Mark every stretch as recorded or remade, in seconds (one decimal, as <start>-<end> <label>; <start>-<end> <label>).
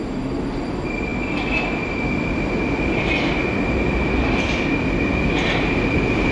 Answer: 0.0-6.3 recorded